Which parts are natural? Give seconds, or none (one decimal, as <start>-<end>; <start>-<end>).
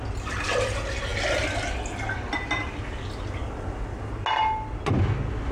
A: 0.0-5.5